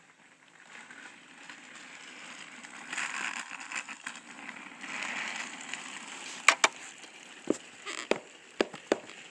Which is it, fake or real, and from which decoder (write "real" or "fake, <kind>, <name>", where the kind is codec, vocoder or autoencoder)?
real